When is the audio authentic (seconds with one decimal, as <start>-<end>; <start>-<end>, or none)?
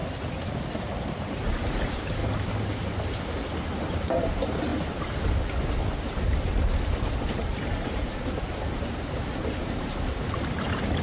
0.0-0.8; 2.2-3.6; 4.7-7.1